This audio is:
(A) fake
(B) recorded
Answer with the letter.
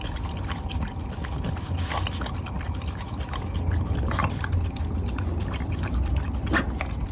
B